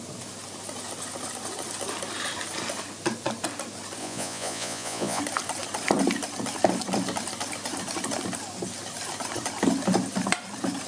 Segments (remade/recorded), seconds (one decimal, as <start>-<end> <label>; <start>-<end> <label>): 0.0-4.0 recorded; 4.0-5.2 remade; 5.2-10.9 recorded